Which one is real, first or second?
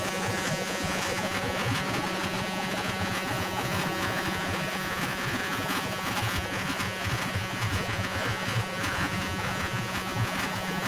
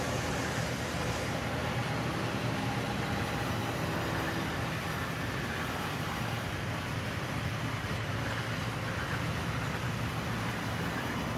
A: second